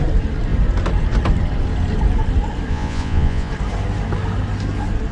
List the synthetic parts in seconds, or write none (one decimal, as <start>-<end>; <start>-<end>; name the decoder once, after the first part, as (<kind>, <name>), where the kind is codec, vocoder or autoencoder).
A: 2.7-3.5 (vocoder, Vocos)